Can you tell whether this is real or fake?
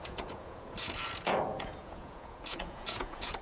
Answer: fake